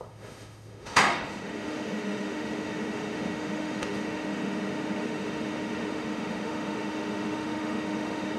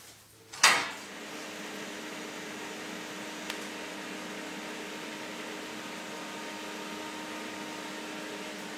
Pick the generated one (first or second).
first